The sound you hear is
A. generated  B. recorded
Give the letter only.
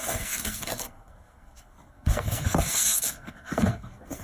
A